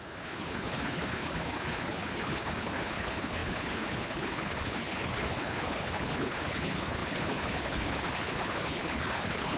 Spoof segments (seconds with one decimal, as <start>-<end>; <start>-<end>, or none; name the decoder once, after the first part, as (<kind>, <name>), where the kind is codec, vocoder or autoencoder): 0.0-9.6 (codec, HILCodec)